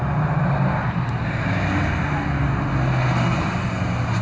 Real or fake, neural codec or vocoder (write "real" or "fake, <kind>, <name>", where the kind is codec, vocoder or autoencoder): real